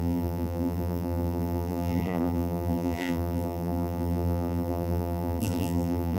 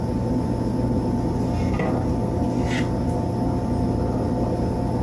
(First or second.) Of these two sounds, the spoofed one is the first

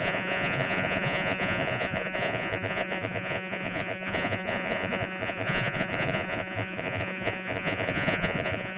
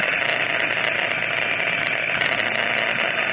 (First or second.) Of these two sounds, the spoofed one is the first